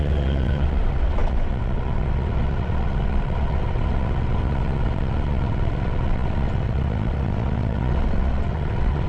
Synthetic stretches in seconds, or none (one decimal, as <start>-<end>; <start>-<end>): 0.0-9.1